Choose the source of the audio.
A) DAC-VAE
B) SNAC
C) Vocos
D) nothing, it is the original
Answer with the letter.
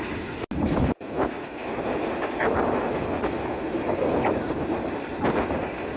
D